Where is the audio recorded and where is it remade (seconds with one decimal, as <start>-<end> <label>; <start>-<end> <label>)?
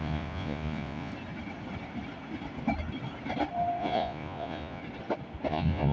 0.0-1.1 remade; 1.1-3.8 recorded; 3.8-4.8 remade; 4.8-5.5 recorded; 5.5-5.9 remade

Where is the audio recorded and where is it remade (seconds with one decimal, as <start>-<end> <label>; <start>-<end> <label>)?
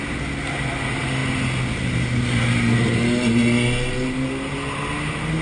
0.0-5.4 recorded